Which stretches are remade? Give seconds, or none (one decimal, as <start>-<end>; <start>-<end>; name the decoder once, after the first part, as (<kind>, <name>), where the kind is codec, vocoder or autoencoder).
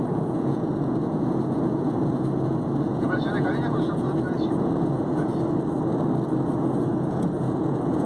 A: 0.0-5.3 (vocoder, Vocos); 6.6-8.1